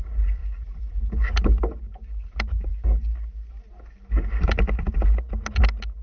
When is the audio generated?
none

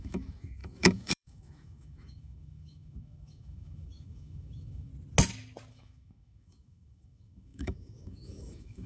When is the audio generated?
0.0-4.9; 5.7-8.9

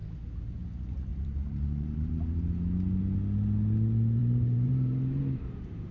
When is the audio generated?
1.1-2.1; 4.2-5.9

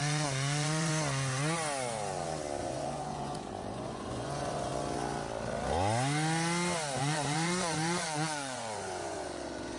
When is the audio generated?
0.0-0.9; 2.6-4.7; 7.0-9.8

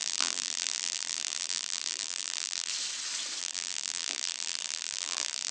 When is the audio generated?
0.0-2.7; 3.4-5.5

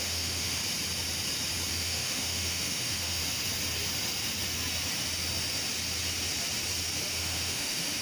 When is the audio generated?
0.0-0.6; 1.7-3.2; 7.1-8.0